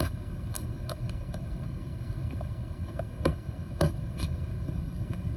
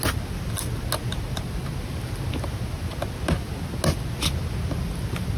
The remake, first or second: first